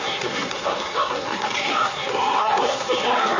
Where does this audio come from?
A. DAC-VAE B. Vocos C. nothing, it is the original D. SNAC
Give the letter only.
D